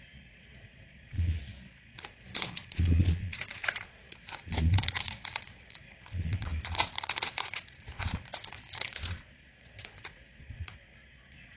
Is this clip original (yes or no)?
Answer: no